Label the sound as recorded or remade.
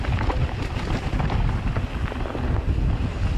recorded